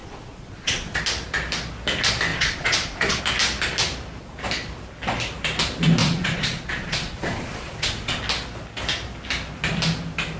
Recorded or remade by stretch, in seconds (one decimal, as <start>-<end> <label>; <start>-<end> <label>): 0.0-1.0 remade; 1.0-2.3 recorded; 2.3-3.2 remade; 3.2-6.0 recorded; 6.0-8.2 remade; 8.2-10.4 recorded